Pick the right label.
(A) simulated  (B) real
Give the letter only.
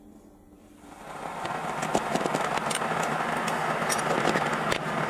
B